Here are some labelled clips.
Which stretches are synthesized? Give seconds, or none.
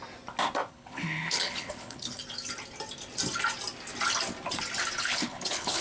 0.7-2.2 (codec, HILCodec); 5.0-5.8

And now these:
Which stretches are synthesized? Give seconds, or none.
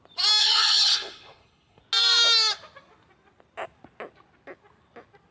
0.4-1.8 (codec, HILCodec)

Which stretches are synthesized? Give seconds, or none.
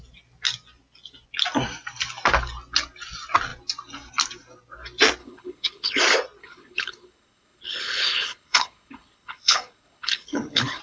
5.2-6.0 (codec, HILCodec); 6.4-10.8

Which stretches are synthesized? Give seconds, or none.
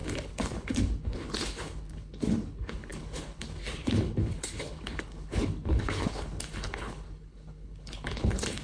0.0-8.6 (codec, HILCodec)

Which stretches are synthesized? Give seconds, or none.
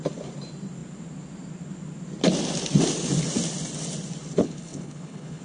4.4-5.4 (codec, HILCodec)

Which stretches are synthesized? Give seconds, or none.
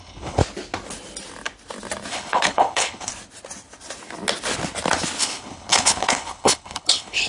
0.0-0.4 (codec, HILCodec); 2.1-3.1; 5.2-7.3